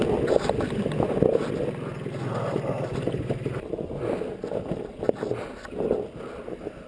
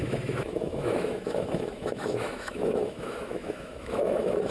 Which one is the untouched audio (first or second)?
first